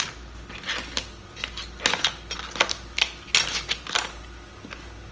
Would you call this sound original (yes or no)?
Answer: yes